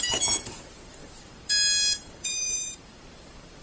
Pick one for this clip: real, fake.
fake